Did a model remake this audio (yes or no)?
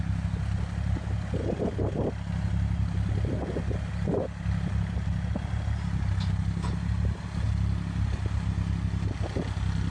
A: no